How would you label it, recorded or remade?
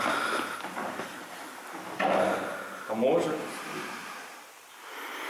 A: recorded